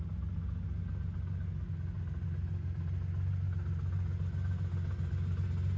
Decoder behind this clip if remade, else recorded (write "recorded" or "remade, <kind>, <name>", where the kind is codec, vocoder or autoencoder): recorded